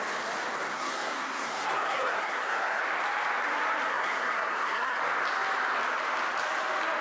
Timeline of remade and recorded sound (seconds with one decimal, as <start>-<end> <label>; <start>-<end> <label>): 0.0-0.7 recorded; 0.7-2.8 remade; 2.8-3.9 recorded; 3.9-5.0 remade; 5.0-7.0 recorded